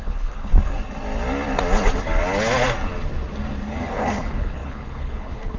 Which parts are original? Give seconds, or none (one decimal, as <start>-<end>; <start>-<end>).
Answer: 0.5-3.9